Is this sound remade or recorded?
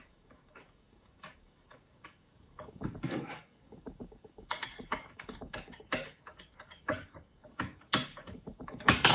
remade